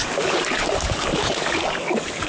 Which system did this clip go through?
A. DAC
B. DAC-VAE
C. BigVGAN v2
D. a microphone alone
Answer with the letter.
A